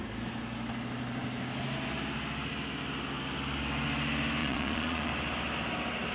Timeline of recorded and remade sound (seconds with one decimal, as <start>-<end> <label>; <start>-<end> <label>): 0.0-4.4 recorded; 4.4-5.1 remade; 5.1-6.1 recorded